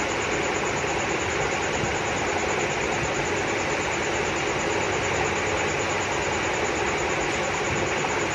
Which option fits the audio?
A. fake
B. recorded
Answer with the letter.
B